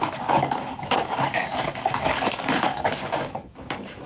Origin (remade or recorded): remade